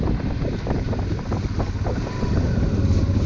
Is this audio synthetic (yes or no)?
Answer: no